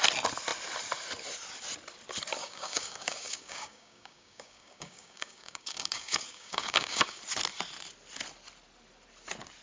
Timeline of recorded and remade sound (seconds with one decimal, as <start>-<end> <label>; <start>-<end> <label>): 0.0-2.4 recorded; 2.4-7.2 remade; 7.2-9.6 recorded